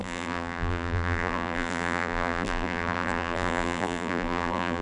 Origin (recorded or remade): remade